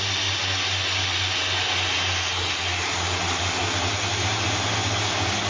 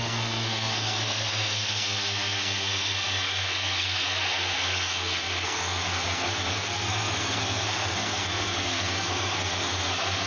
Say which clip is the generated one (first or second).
second